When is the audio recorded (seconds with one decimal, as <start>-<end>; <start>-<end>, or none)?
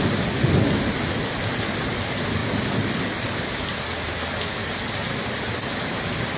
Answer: 2.4-3.0; 4.6-5.9